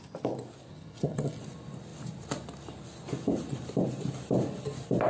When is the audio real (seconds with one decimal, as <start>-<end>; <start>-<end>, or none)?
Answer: 0.0-0.7; 1.4-5.1